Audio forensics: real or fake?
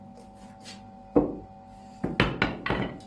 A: real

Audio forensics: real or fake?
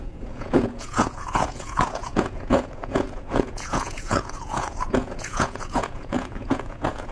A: fake